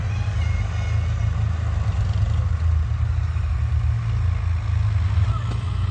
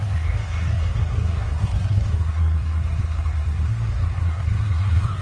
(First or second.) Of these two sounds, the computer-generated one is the second